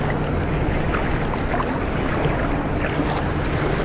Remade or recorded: recorded